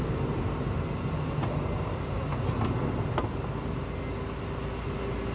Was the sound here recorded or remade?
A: recorded